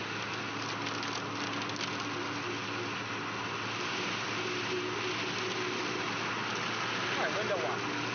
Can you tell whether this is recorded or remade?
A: recorded